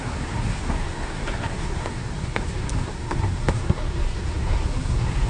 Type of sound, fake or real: fake